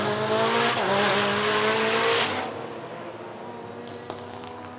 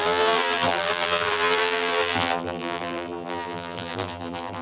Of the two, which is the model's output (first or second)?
second